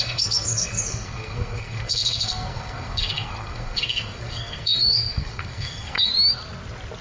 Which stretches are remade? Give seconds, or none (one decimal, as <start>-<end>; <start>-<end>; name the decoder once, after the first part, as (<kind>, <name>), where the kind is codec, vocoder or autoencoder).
0.0-6.1 (codec, SNAC)